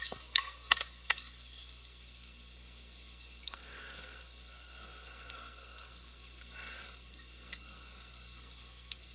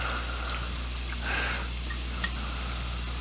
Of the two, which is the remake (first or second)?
first